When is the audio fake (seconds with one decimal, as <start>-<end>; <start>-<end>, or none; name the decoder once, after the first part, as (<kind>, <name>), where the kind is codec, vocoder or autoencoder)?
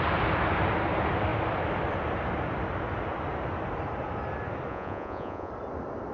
4.7-5.5 (vocoder, Vocos)